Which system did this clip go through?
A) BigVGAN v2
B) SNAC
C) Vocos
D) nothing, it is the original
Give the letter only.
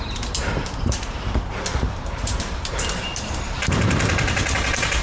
A